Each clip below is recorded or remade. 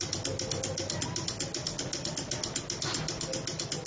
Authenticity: recorded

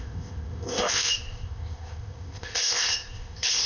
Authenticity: remade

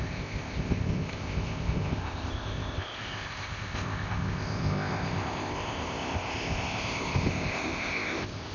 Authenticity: remade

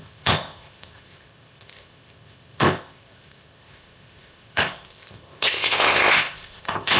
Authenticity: remade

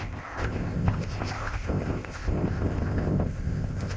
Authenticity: remade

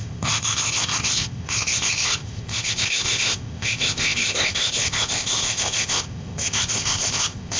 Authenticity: remade